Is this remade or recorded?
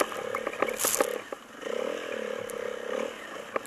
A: recorded